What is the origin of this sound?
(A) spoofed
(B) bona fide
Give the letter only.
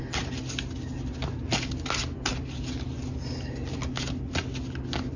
B